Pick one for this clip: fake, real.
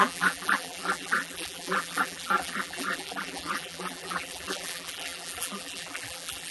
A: fake